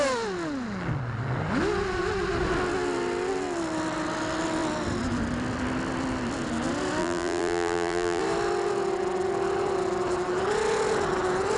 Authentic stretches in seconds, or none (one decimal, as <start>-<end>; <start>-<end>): 0.0-7.0; 8.2-11.6